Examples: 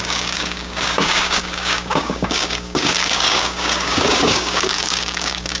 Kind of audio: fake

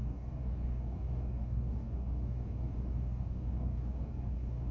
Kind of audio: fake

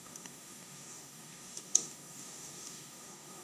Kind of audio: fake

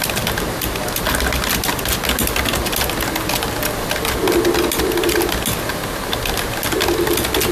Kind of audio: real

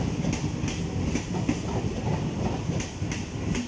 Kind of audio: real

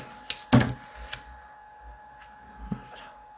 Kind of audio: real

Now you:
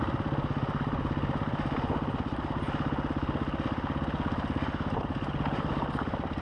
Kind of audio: real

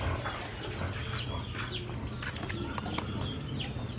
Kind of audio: real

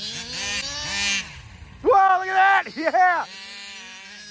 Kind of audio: real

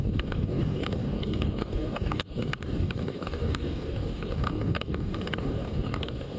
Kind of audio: fake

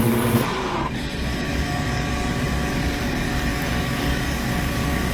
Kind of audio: fake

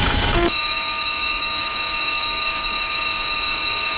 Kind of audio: fake